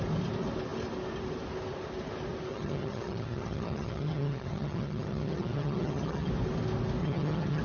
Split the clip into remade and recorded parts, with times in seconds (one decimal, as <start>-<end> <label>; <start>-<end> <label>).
0.0-2.5 recorded; 2.5-6.3 remade; 6.3-7.0 recorded; 7.0-7.6 remade